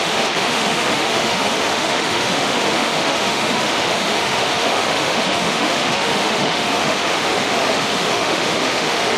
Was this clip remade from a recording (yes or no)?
yes